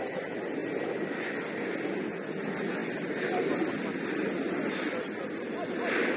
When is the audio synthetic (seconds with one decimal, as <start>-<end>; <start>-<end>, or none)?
none